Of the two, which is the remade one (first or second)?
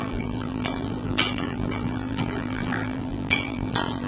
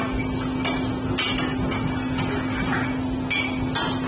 first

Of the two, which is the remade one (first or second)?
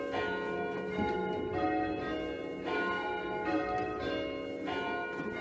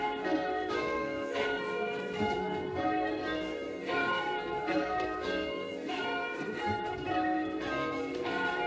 second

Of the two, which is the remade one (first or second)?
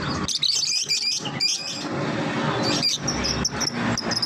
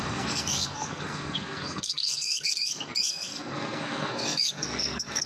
second